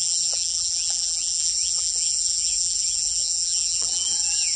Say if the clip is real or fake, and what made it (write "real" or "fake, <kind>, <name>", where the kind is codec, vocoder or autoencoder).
fake, vocoder, BigVGAN v2